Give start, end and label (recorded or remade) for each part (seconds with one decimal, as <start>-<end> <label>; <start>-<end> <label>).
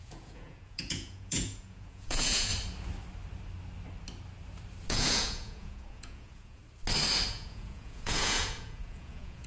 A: 0.0-2.5 remade; 2.5-4.9 recorded; 4.9-6.6 remade; 6.6-7.3 recorded; 7.3-9.5 remade